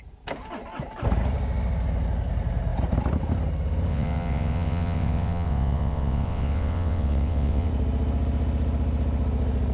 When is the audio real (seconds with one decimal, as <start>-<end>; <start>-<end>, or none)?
0.0-3.9; 7.7-9.7